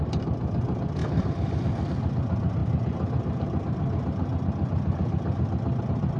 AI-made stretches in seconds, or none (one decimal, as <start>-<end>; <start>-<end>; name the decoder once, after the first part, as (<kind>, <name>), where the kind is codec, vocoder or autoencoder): none